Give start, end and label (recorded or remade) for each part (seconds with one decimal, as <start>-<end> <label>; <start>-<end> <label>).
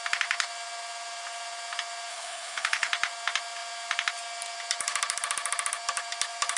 0.0-2.1 recorded; 2.1-2.9 remade; 2.9-6.6 recorded